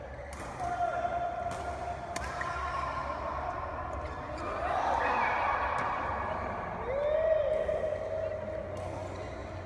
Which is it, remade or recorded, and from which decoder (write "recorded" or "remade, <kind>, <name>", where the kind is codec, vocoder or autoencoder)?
recorded